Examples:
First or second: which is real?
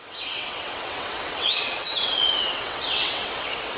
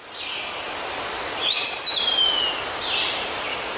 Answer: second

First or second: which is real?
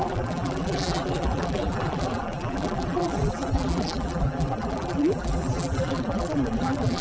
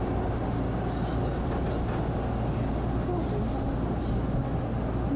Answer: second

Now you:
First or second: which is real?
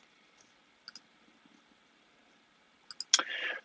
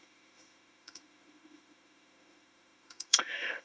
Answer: first